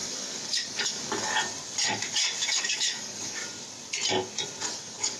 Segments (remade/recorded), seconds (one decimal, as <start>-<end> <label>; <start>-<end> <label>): 0.0-1.3 remade; 1.3-2.6 recorded; 2.6-3.4 remade; 3.4-4.7 recorded; 4.7-5.2 remade